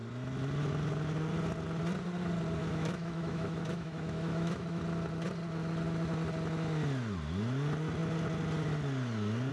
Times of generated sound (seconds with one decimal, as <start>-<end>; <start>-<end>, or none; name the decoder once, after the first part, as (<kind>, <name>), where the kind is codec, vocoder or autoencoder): 2.6-4.8 (autoencoder, DAC-VAE)